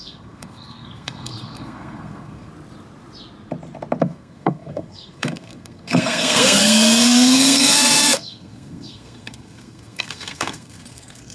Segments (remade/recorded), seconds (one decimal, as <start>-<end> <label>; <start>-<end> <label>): 0.0-2.5 remade; 2.5-4.0 recorded; 4.0-11.3 remade